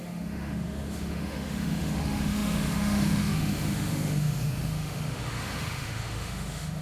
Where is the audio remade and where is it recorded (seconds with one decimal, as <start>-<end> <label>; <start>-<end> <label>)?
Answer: 0.0-6.8 remade